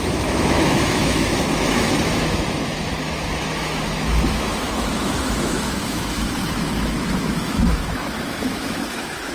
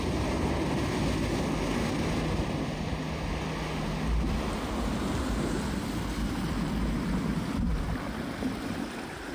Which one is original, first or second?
second